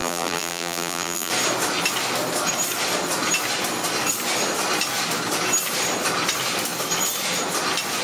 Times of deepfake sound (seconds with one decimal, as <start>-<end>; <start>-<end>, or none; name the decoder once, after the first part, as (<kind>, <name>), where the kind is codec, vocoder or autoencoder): 0.0-1.3 (vocoder, BigVGAN v2)